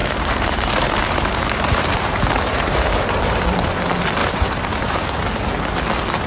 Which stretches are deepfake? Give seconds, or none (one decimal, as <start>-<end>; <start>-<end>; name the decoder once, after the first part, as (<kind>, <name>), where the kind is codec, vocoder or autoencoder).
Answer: 0.0-3.8 (vocoder, BigVGAN v2); 4.2-5.1